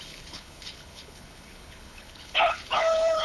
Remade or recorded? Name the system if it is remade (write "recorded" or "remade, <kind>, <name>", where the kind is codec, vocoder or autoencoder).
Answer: remade, codec, HILCodec